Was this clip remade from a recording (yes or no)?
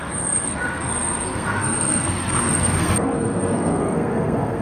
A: yes